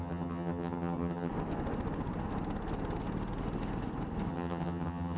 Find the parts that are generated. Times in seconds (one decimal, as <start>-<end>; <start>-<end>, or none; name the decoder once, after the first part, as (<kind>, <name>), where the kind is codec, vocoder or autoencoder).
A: 0.0-1.3 (vocoder, HiFi-GAN); 4.3-5.2